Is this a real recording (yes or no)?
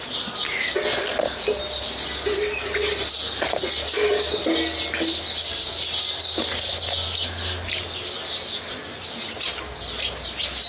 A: yes